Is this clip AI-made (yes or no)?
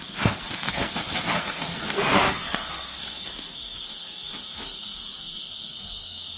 yes